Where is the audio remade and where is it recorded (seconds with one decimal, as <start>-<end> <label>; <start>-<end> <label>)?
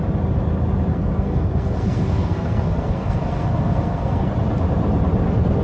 0.0-0.9 recorded; 0.9-4.3 remade; 4.3-5.6 recorded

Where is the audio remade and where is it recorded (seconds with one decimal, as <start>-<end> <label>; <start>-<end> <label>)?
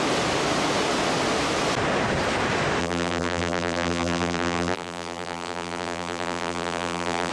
0.0-2.8 recorded; 2.8-7.3 remade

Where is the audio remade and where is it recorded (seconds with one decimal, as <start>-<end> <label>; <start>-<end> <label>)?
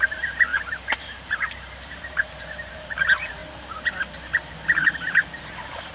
0.0-3.4 remade; 3.4-5.5 recorded; 5.5-5.9 remade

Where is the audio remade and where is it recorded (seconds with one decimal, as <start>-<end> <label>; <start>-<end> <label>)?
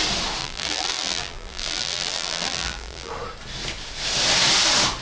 0.0-0.4 recorded; 0.4-3.1 remade; 3.1-5.0 recorded